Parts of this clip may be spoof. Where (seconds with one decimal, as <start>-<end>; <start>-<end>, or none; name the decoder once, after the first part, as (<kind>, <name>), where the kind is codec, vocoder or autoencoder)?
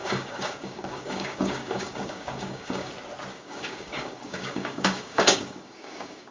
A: 0.0-2.9 (codec, DAC); 3.3-6.3